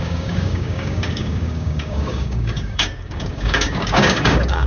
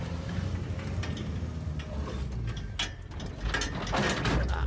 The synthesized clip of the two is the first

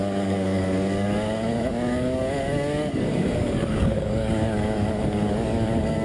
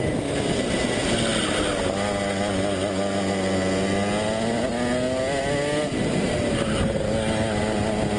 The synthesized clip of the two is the first